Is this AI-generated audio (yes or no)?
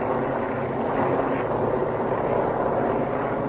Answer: no